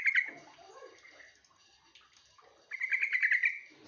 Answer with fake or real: real